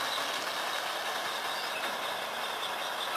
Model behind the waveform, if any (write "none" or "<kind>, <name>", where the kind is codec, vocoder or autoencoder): none